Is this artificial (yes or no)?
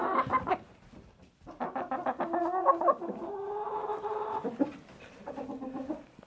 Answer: no